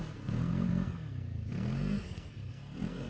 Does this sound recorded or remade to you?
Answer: remade